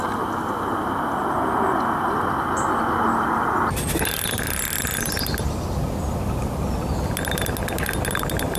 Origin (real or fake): real